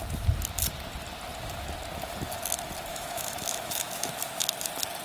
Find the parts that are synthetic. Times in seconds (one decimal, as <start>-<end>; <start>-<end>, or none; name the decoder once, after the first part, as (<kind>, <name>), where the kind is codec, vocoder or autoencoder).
2.9-4.1 (autoencoder, DAC-VAE)